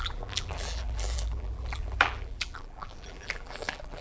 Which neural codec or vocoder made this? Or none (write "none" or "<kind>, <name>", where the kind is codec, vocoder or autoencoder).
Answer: vocoder, BigVGAN v2